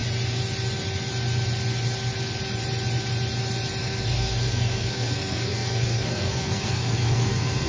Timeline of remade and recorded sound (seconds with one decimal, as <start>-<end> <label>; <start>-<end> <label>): 0.0-3.8 recorded; 3.8-7.7 remade

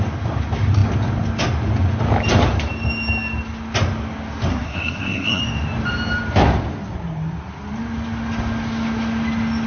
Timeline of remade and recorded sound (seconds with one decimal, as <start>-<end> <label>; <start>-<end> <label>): 0.0-4.5 recorded; 4.5-5.4 remade; 5.4-9.7 recorded

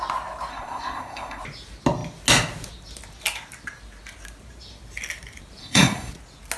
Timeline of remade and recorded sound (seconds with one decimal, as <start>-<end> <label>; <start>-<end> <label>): 0.0-0.5 recorded; 0.5-1.4 remade; 1.4-5.6 recorded; 5.6-6.1 remade; 6.1-6.6 recorded

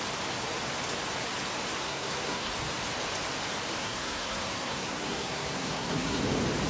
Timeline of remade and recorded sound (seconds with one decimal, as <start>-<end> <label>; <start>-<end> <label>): 0.0-1.8 recorded; 1.8-2.5 remade; 2.5-3.8 recorded; 3.8-6.2 remade; 6.2-6.7 recorded

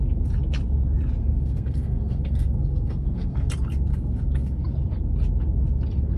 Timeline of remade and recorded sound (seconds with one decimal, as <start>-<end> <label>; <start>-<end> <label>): 0.0-1.2 recorded; 1.2-3.5 remade; 3.5-3.9 recorded; 3.9-4.7 remade; 4.7-6.2 recorded